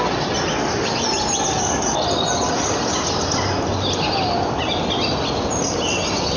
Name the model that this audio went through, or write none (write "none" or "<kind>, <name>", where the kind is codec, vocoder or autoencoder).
none